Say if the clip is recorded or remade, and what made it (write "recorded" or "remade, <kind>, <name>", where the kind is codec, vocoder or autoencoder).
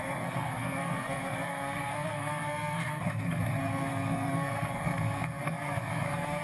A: remade, codec, SNAC